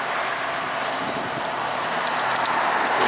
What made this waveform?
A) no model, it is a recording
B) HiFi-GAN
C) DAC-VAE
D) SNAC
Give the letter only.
A